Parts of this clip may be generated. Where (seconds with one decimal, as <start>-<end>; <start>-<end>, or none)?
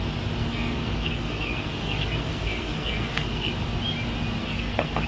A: 0.4-3.5; 4.4-5.1